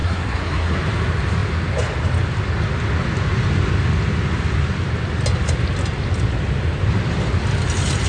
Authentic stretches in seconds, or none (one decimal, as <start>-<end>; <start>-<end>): 0.8-8.1

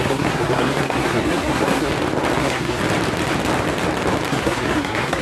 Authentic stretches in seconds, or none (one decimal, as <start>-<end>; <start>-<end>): 1.9-2.4; 2.8-4.3

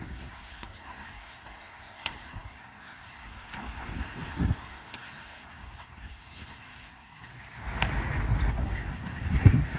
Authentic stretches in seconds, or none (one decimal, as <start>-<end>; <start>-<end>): 7.3-8.5